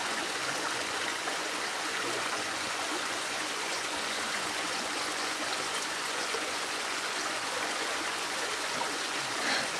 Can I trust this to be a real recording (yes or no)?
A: no